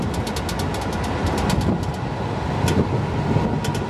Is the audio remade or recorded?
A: recorded